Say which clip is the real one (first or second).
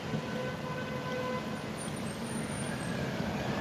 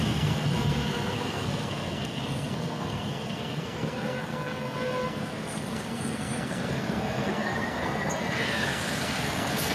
first